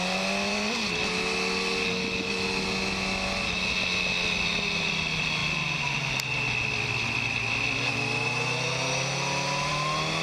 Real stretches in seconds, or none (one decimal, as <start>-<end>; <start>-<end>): 0.0-10.2